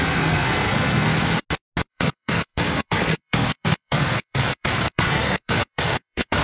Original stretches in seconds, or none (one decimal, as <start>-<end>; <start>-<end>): 1.1-1.9